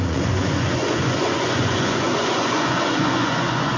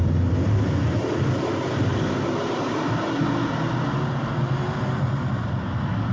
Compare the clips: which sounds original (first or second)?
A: second